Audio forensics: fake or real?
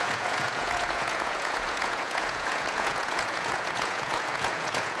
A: fake